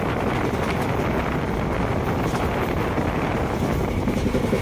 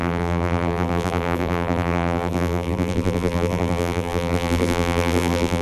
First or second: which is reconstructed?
second